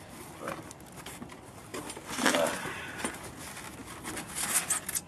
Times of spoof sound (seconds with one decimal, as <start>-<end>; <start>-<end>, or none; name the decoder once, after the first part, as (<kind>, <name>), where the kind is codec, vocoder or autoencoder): none